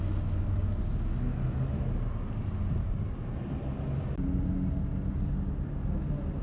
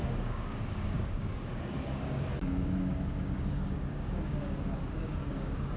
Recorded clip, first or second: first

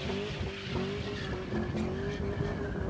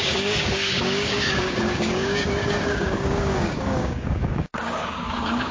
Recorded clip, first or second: first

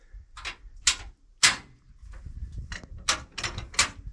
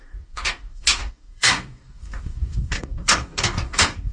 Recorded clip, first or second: first